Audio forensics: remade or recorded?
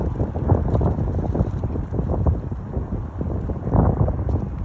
recorded